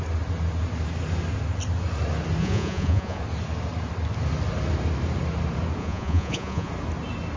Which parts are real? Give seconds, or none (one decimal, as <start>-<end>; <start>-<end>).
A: 0.0-2.4; 3.2-5.8; 6.7-7.4